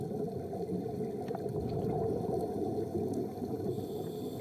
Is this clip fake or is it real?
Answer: real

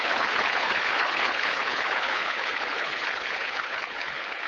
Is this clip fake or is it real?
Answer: fake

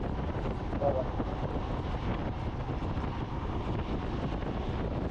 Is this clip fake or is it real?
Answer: real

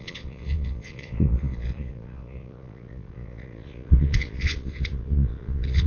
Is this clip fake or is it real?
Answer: fake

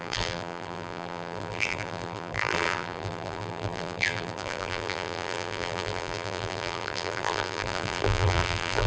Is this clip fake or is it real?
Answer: fake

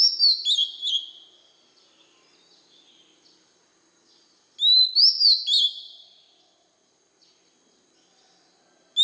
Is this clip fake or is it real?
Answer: real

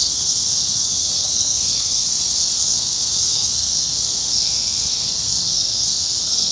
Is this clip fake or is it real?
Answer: fake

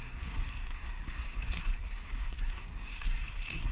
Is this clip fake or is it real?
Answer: fake